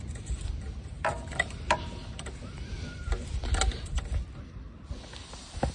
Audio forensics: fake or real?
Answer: real